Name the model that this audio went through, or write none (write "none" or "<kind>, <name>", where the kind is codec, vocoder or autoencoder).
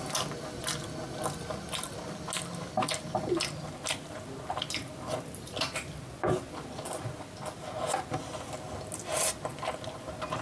none